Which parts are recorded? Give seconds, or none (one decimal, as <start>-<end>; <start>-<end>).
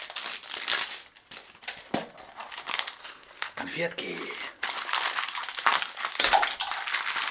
0.0-3.0; 3.6-7.3